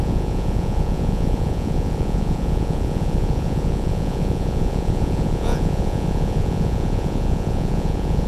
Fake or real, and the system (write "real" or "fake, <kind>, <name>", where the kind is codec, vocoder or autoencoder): fake, vocoder, Vocos